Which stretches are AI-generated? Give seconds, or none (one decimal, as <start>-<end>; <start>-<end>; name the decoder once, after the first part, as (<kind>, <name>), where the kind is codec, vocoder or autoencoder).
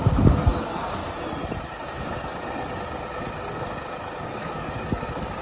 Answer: 0.6-1.0 (codec, DAC); 4.2-5.4